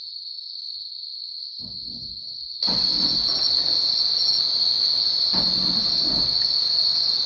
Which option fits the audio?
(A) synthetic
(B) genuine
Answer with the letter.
B